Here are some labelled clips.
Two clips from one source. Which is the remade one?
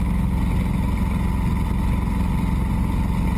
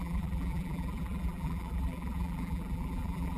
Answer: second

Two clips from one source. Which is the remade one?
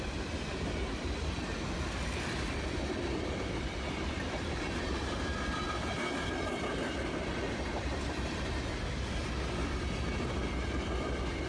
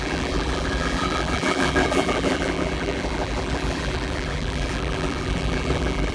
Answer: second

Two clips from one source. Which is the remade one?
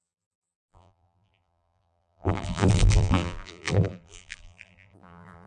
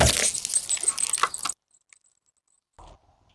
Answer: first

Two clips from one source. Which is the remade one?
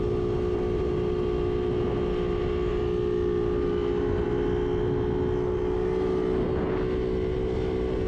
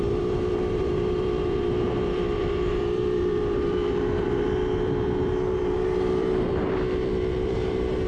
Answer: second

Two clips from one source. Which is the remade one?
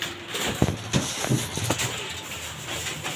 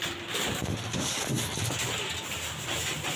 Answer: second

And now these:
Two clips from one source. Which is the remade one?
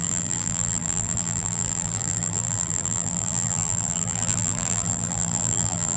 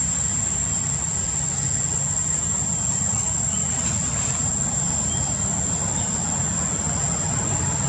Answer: first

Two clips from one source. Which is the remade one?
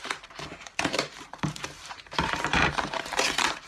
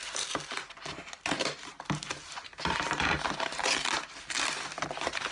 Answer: first